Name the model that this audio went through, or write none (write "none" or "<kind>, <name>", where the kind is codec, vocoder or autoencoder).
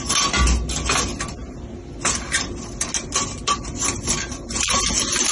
none